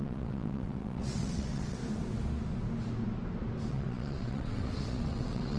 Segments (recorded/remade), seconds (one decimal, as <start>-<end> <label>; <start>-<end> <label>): 0.0-1.8 remade; 1.8-3.7 recorded; 3.7-5.6 remade